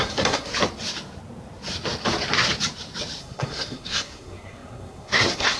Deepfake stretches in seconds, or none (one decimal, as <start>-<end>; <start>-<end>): 0.0-0.5; 3.2-5.6